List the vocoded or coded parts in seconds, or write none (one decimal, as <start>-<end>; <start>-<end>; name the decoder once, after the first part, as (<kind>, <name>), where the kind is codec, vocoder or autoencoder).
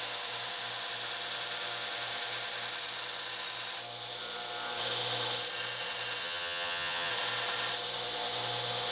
6.2-7.1 (vocoder, HiFi-GAN)